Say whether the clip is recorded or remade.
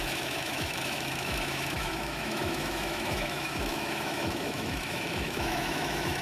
remade